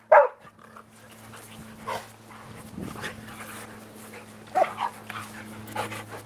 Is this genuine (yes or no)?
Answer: yes